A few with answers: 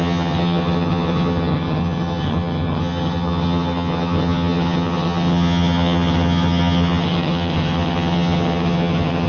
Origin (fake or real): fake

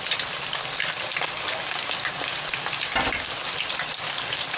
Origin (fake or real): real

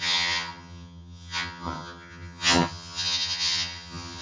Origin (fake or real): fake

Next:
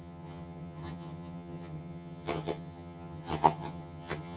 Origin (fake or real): fake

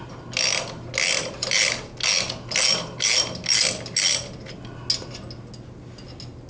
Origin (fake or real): real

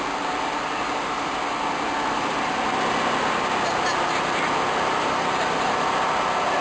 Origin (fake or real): real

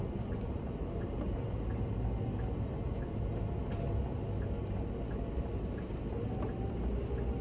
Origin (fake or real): real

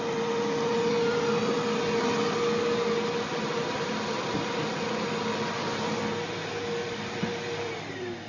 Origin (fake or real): real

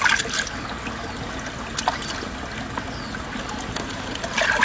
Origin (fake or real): real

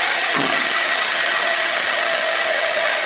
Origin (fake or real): fake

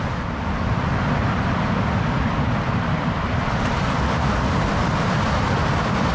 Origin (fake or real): real